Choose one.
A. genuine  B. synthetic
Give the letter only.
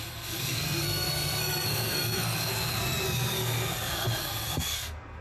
B